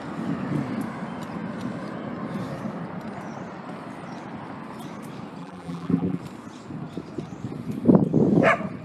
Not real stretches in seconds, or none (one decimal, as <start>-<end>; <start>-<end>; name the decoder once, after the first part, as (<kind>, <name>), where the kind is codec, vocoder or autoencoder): 5.4-6.2 (vocoder, BigVGAN v2)

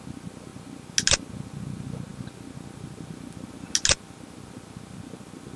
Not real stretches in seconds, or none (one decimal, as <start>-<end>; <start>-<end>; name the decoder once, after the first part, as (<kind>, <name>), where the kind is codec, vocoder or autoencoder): none

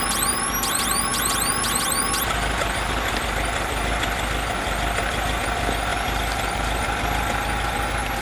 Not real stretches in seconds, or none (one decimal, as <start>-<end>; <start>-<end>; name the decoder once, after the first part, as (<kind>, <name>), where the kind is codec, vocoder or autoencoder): none

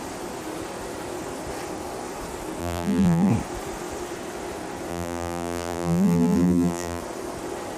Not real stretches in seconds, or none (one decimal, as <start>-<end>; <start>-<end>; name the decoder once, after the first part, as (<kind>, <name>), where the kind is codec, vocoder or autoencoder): 2.6-3.3 (vocoder, BigVGAN v2); 4.9-7.0

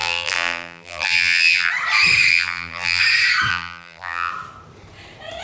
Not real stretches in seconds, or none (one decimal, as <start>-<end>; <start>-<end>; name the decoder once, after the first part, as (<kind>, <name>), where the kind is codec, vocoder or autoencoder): 0.0-1.7 (vocoder, BigVGAN v2); 2.3-3.0; 3.5-4.3

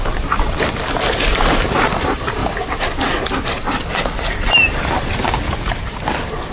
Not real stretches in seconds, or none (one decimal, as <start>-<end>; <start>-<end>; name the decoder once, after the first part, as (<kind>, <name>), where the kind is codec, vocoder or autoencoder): 0.0-2.4 (vocoder, BigVGAN v2); 4.8-6.5

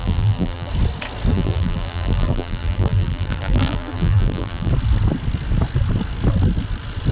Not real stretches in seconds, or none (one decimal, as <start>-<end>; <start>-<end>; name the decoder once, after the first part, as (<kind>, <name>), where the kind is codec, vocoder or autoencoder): 0.0-0.7 (vocoder, BigVGAN v2); 1.3-4.7

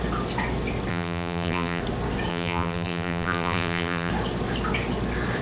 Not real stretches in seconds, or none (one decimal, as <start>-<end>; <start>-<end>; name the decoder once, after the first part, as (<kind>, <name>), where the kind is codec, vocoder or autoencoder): 0.9-1.8 (vocoder, BigVGAN v2); 2.3-4.1